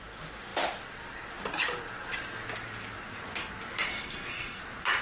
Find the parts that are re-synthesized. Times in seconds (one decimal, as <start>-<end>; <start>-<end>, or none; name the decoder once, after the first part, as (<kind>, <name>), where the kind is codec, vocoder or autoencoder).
3.9-4.6 (codec, SNAC)